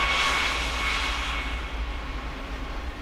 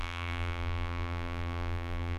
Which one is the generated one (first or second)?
second